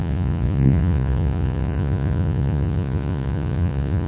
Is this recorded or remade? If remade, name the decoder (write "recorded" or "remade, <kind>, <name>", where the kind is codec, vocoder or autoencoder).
remade, vocoder, Vocos